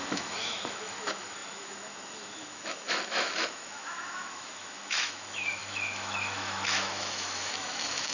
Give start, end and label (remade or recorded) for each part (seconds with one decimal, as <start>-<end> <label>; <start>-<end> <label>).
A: 0.0-8.1 remade